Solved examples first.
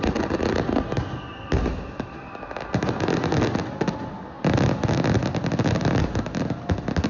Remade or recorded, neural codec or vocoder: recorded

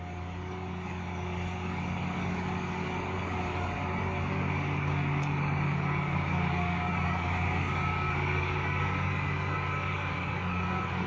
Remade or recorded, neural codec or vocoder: remade, codec, DAC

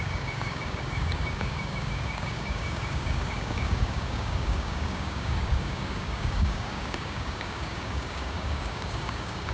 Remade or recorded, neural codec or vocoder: remade, codec, DAC